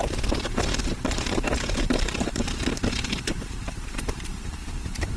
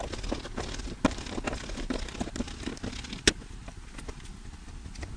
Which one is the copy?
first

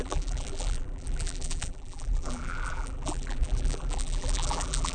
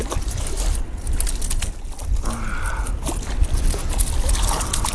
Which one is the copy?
first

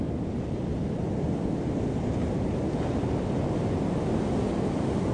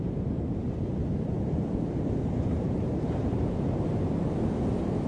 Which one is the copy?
second